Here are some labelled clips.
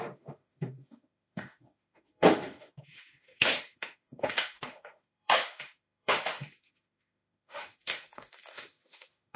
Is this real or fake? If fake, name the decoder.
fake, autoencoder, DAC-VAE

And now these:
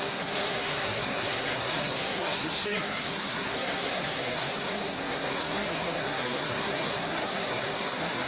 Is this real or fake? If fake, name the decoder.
fake, codec, SNAC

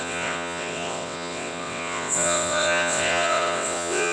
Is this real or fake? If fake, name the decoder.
fake, vocoder, WaveNeXt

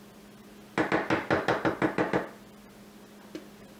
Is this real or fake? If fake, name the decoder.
real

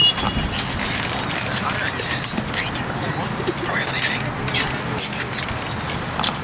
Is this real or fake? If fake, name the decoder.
real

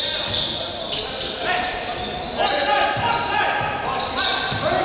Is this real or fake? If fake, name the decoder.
real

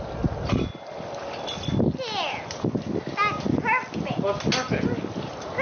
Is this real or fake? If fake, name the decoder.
real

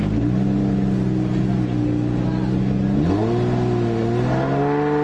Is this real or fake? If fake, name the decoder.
real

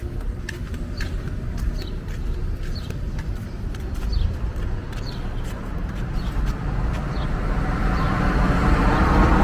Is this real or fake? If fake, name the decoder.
real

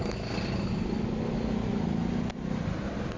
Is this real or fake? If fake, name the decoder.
real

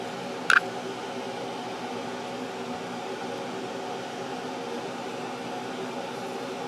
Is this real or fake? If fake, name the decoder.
real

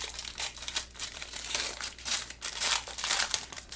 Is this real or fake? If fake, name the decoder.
fake, vocoder, BigVGAN v2